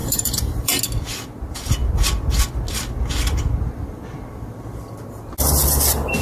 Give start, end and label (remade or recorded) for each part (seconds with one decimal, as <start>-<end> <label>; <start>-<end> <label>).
0.0-0.8 remade; 0.8-6.2 recorded